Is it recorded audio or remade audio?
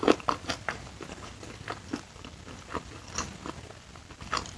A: recorded